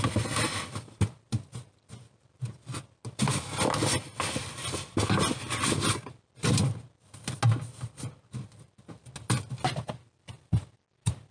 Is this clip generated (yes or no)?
no